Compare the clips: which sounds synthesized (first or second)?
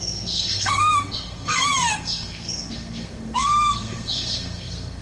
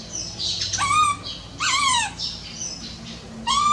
first